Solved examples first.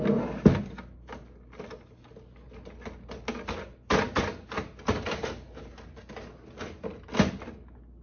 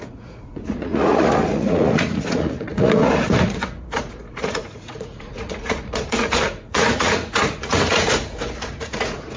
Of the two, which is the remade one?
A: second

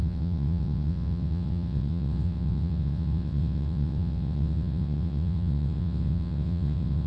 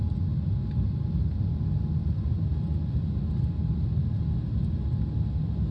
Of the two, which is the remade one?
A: first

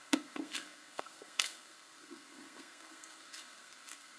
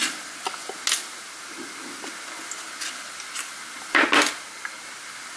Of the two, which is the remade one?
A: first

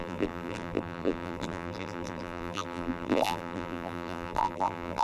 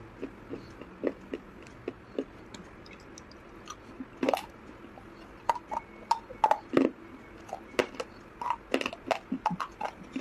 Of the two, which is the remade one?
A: first